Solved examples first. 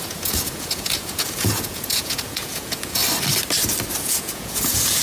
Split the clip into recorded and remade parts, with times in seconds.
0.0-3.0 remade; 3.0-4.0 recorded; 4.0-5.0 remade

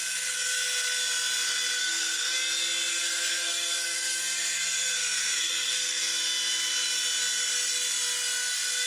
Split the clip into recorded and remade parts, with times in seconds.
0.0-1.8 recorded; 1.8-2.4 remade; 2.4-2.9 recorded; 2.9-6.0 remade; 6.0-8.9 recorded

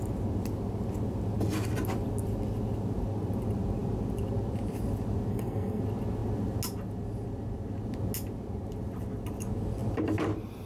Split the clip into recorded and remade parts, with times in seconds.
0.0-5.3 recorded; 5.3-5.8 remade; 5.8-10.7 recorded

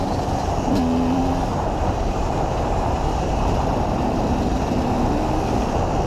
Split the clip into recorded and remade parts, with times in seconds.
0.0-1.5 recorded; 1.5-5.0 remade; 5.0-6.1 recorded

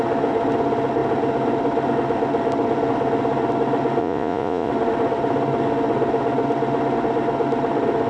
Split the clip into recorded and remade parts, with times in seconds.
0.0-4.0 recorded; 4.0-4.7 remade; 4.7-8.1 recorded

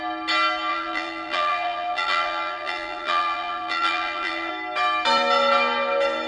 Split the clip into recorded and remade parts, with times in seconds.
0.0-0.7 recorded; 0.7-4.5 remade; 4.5-6.3 recorded

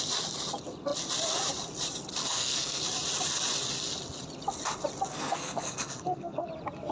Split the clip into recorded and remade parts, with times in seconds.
0.0-2.2 recorded; 2.2-2.8 remade; 2.8-5.1 recorded; 5.1-6.5 remade; 6.5-6.9 recorded

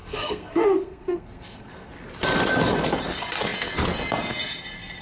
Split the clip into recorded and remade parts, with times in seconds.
0.0-1.9 remade; 1.9-5.0 recorded